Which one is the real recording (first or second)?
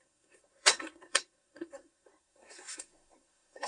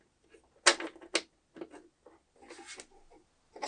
second